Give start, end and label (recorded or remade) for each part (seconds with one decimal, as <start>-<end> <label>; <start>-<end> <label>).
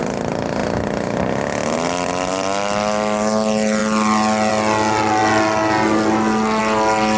0.0-7.2 recorded